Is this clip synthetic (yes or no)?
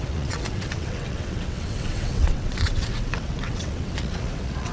yes